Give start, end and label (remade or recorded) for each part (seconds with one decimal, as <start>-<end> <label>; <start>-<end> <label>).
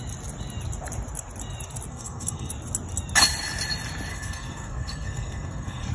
0.0-1.9 recorded; 1.9-2.5 remade; 2.5-4.1 recorded; 4.1-5.9 remade